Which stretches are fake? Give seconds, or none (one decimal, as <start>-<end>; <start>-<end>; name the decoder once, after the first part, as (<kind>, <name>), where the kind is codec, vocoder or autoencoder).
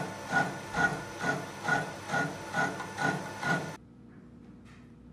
none